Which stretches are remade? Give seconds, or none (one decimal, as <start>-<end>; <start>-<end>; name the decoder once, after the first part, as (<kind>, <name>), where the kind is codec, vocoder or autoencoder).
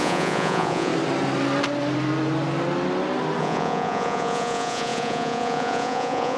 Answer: 0.0-0.9 (vocoder, Vocos); 3.4-6.4